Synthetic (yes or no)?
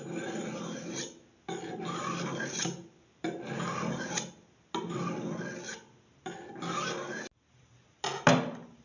no